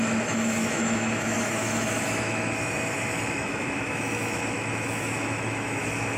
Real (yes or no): no